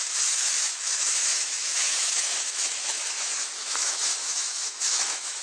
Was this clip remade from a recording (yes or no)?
yes